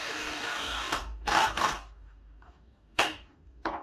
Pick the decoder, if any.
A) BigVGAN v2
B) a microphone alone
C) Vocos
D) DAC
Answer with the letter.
D